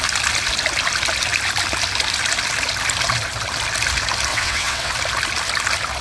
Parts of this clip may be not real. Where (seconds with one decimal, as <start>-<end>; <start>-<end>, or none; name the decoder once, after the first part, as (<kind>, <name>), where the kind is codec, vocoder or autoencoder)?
4.3-4.9 (vocoder, WaveNeXt)